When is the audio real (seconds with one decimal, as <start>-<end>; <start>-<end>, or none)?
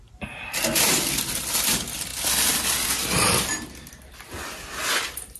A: 0.0-5.4